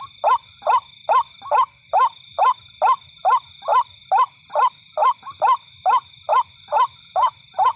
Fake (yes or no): no